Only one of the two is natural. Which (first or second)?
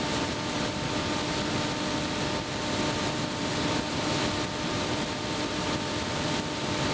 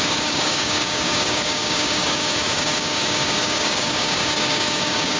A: first